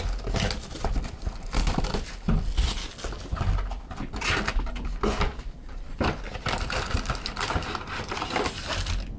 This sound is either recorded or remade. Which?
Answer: recorded